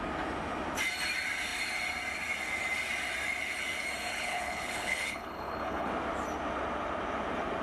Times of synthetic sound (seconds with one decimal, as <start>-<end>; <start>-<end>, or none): 4.1-5.9